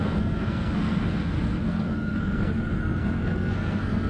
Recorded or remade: remade